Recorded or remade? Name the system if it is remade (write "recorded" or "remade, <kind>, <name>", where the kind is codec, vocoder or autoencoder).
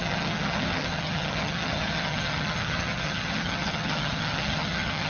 remade, vocoder, HiFi-GAN